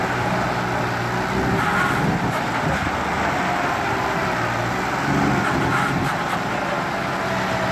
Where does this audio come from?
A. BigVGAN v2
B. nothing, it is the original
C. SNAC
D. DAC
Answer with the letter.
A